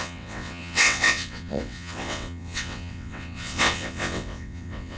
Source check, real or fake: fake